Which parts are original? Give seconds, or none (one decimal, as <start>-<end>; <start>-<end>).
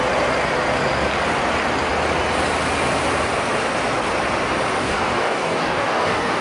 0.0-4.8